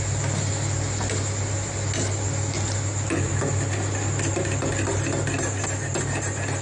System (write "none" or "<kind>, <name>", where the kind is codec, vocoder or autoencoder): none